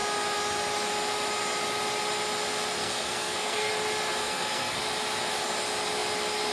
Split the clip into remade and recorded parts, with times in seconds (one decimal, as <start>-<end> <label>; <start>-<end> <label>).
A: 0.0-2.8 recorded; 2.8-3.7 remade; 3.7-4.2 recorded; 4.2-4.8 remade; 4.8-6.5 recorded